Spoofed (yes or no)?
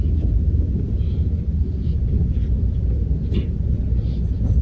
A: no